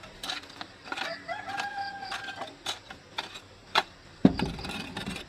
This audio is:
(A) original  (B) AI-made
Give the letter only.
B